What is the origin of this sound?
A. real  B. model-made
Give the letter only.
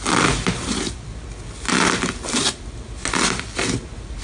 A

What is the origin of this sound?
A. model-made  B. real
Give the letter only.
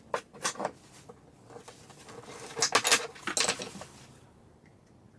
B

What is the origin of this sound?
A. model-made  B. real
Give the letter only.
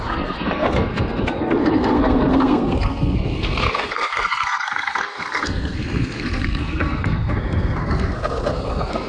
A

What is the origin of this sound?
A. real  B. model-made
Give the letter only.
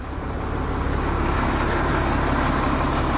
A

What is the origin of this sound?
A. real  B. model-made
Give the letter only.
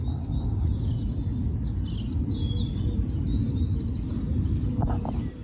A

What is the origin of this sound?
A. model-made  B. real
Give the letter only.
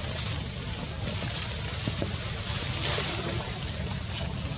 B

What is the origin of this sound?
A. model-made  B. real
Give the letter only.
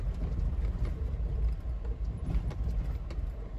B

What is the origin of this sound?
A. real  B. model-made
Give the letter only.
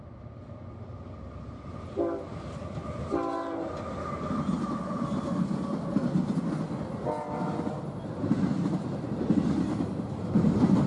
A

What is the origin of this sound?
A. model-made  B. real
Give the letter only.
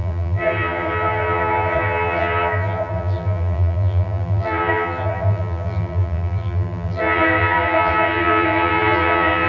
A